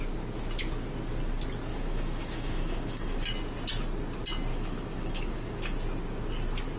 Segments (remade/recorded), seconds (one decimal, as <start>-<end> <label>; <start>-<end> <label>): 0.0-1.7 recorded; 1.7-3.2 remade; 3.2-4.5 recorded; 4.5-5.6 remade; 5.6-6.8 recorded